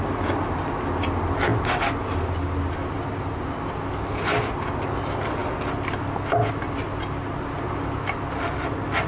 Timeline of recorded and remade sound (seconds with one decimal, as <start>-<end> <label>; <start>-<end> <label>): 0.0-9.1 recorded